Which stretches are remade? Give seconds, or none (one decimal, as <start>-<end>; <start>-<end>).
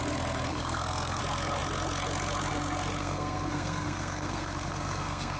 0.5-1.2; 3.0-5.4